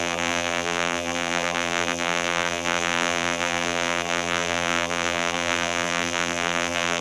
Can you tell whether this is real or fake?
fake